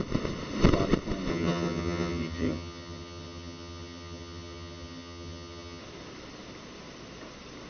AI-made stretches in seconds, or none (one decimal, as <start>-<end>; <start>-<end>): 1.3-5.8

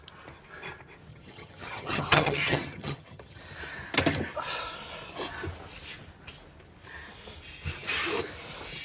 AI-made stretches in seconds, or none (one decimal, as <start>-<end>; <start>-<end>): 1.1-3.4

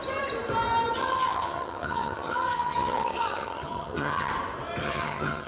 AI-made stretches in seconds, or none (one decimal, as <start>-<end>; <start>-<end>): 1.0-4.3; 4.8-5.5

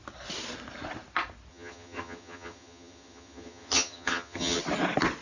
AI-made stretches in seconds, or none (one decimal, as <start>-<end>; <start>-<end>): 1.5-4.6

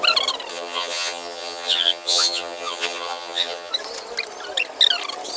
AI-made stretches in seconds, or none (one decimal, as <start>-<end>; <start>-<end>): 0.5-3.7

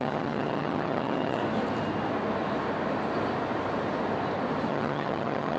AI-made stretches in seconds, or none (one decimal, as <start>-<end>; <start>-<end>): 0.0-1.4; 4.7-5.6

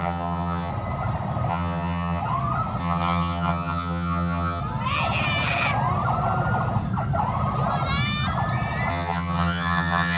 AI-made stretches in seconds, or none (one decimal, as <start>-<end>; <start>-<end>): 0.0-0.7; 1.5-2.2; 2.8-4.6; 8.9-10.2

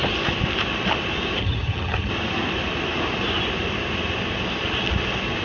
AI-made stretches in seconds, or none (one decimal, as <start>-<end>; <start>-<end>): 1.4-2.1